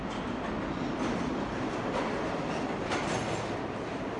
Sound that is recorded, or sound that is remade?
recorded